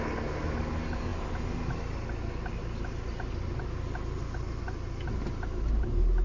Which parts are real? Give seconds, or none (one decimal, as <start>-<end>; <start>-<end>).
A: 0.0-6.2